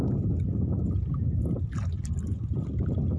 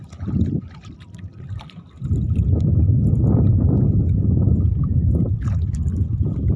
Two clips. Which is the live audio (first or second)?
first